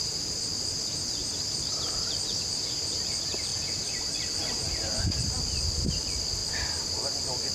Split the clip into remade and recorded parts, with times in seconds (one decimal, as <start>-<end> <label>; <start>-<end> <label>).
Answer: 0.0-1.2 recorded; 1.2-2.9 remade; 2.9-3.5 recorded; 3.5-5.4 remade; 5.4-6.4 recorded; 6.4-7.1 remade; 7.1-7.5 recorded